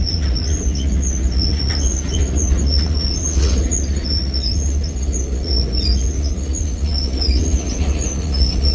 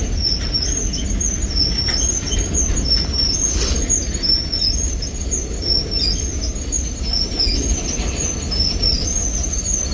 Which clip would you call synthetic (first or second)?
first